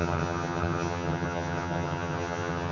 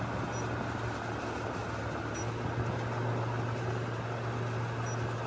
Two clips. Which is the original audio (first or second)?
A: second